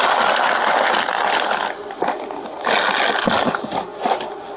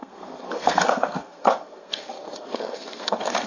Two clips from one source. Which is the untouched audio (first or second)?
first